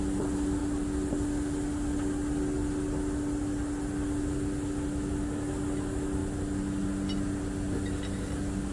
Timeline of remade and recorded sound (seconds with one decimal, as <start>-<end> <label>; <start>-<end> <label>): 0.0-8.7 recorded